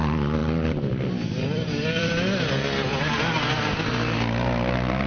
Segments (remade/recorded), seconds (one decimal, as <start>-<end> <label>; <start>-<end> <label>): 0.0-0.4 recorded; 0.4-2.5 remade; 2.5-5.1 recorded

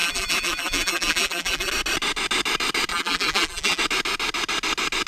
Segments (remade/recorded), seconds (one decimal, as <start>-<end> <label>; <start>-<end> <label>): 0.0-1.7 remade; 1.7-2.9 recorded; 2.9-3.8 remade; 3.8-5.1 recorded

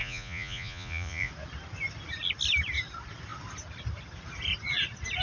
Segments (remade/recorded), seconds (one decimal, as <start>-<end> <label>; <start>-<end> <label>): 0.0-1.3 remade; 1.3-5.2 recorded